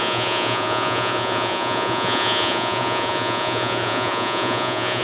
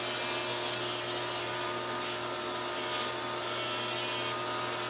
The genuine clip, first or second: second